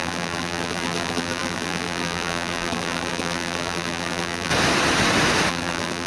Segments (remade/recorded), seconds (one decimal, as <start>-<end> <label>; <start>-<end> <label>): 0.0-4.5 remade; 4.5-5.5 recorded; 5.5-6.1 remade